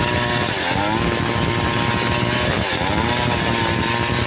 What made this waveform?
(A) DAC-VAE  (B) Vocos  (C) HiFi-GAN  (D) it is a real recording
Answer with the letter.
D